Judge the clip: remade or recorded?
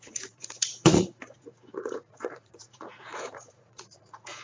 remade